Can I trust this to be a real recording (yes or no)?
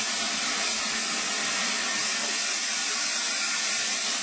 yes